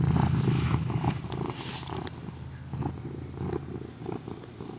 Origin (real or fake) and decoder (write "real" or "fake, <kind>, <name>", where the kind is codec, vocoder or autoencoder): real